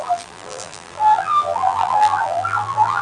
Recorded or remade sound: remade